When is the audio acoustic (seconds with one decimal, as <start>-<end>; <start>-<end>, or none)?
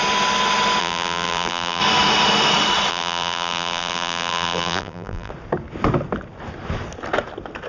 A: 0.0-0.8; 1.8-2.9; 5.3-7.7